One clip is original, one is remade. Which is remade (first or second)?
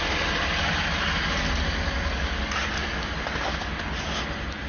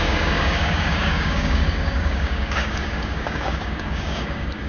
second